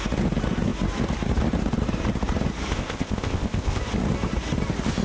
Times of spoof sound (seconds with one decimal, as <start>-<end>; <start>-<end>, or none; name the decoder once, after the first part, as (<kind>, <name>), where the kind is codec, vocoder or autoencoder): 2.7-3.8 (codec, ZipCodec)